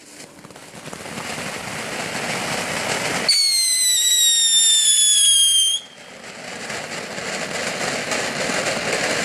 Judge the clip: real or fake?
real